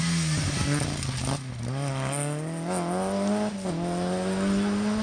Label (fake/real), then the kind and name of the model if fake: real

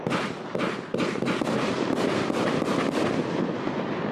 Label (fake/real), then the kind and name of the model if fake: real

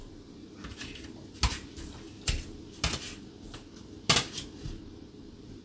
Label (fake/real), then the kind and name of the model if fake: real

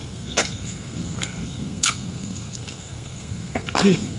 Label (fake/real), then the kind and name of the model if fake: fake, codec, SNAC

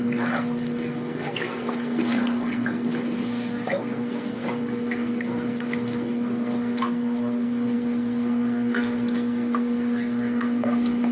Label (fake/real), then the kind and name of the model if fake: fake, codec, SNAC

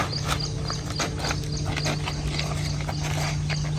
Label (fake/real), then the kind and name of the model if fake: real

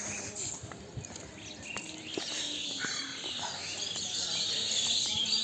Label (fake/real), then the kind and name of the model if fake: real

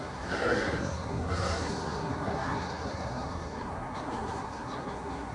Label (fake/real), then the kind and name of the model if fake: fake, codec, SNAC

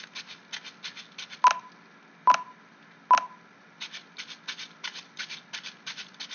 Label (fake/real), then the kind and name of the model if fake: real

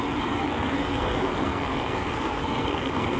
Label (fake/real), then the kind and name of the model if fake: fake, codec, SNAC